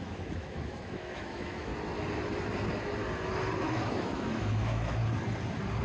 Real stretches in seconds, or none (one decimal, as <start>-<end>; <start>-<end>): 1.7-3.6; 5.0-5.8